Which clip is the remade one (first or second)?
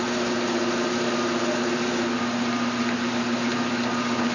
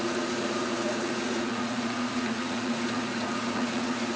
second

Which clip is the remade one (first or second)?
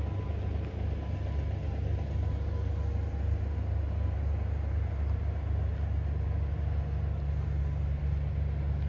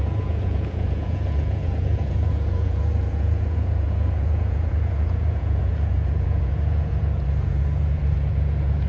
second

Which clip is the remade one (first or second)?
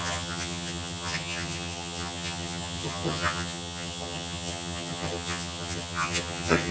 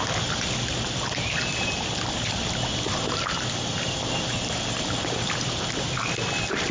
first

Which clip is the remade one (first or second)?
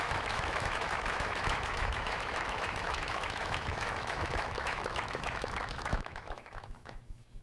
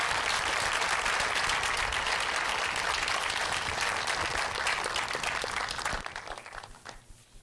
first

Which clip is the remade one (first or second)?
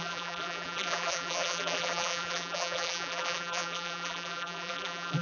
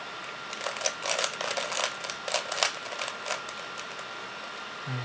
first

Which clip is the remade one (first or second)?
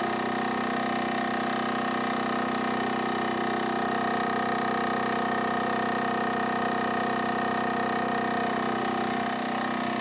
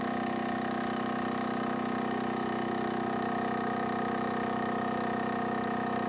second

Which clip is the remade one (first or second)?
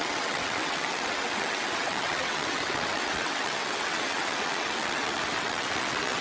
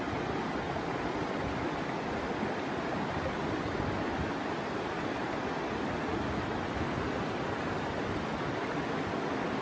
first